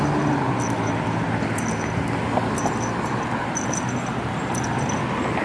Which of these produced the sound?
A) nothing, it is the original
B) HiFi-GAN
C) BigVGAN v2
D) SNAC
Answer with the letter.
A